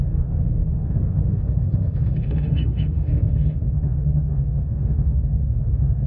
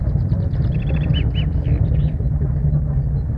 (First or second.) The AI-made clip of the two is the first